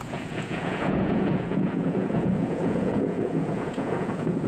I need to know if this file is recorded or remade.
remade